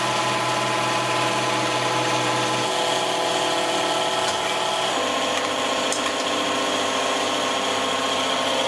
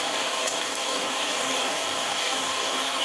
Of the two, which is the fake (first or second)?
second